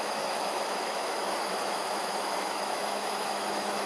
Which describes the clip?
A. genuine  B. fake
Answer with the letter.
B